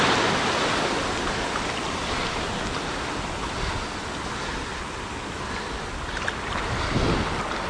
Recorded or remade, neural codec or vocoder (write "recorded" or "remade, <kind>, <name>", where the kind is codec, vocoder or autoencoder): recorded